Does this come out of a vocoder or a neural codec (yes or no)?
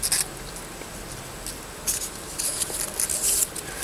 no